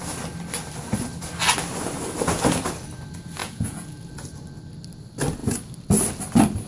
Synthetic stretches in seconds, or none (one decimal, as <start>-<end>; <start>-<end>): 3.4-4.1